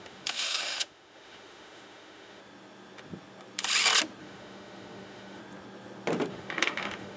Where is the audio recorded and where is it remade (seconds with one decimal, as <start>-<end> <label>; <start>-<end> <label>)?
0.0-2.4 remade; 2.4-4.2 recorded; 4.2-5.4 remade; 5.4-6.3 recorded; 6.3-7.2 remade